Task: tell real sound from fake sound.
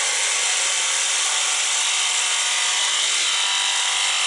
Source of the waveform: real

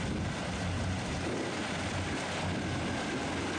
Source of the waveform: real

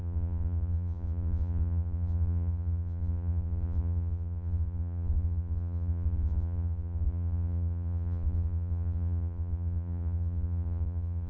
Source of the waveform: fake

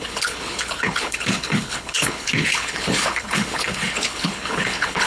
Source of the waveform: fake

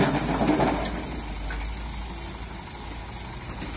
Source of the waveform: real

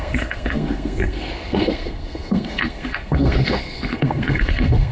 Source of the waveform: fake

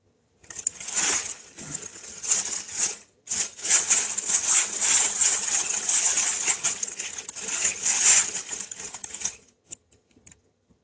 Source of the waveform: fake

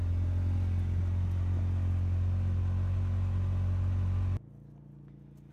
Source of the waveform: real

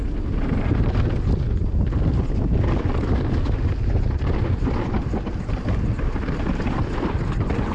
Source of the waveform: real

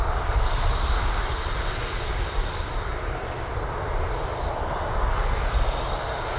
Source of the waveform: real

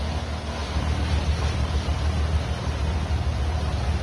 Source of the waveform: real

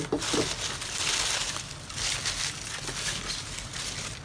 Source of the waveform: real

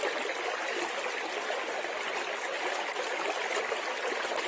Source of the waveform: real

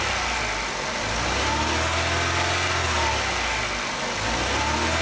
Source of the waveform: real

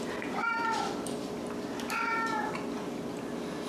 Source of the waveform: real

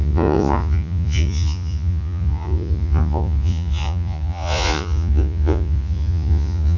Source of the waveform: fake